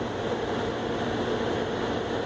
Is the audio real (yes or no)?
yes